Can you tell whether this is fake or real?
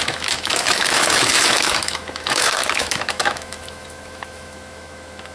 fake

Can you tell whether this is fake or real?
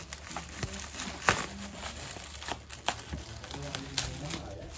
real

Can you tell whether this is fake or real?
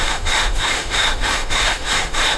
fake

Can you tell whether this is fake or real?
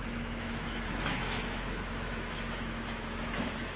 fake